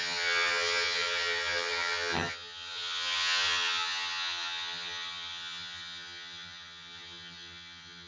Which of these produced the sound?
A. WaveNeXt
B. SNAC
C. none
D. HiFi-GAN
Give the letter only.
D